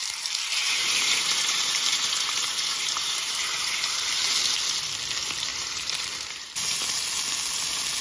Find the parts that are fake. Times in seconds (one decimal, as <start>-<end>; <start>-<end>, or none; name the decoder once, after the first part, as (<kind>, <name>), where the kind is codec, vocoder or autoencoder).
0.5-3.9 (vocoder, BigVGAN v2); 5.5-6.5